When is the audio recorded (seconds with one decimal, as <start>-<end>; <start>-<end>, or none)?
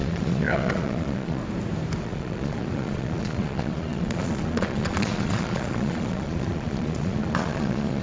1.4-2.0